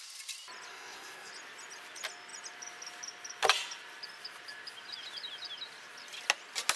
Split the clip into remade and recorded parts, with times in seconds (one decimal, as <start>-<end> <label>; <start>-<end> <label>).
0.0-0.7 recorded; 0.7-1.3 remade; 1.3-6.8 recorded